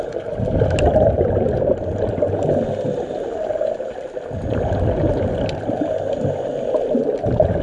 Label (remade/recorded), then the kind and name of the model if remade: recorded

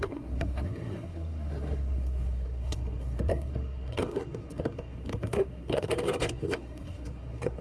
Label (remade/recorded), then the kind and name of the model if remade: remade, codec, SNAC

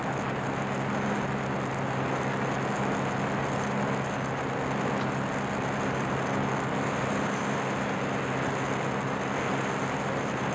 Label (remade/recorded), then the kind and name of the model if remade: recorded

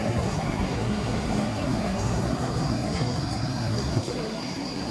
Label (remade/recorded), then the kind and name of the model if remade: remade, codec, SNAC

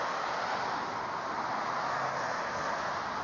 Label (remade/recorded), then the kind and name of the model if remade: recorded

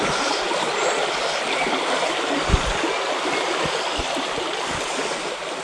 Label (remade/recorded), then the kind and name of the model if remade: recorded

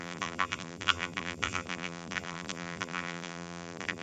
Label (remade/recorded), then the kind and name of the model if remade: remade, vocoder, BigVGAN v2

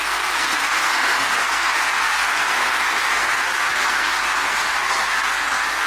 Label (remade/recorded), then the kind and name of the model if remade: remade, codec, SNAC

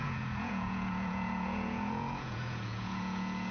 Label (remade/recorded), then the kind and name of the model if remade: remade, vocoder, Vocos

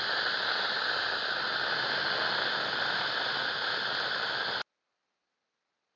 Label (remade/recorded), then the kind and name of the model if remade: recorded